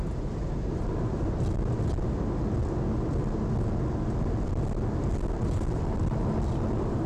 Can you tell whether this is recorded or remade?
recorded